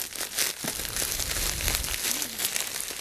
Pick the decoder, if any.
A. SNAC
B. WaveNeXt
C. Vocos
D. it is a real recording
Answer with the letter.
D